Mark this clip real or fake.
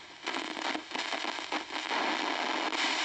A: real